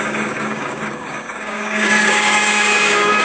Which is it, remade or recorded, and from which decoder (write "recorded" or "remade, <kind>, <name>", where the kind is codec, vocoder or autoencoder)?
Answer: remade, codec, DAC